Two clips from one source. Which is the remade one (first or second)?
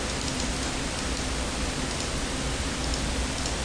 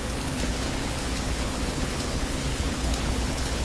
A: second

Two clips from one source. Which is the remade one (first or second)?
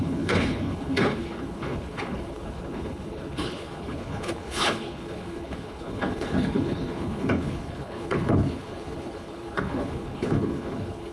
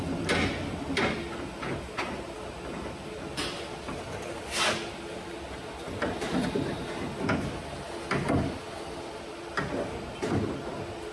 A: first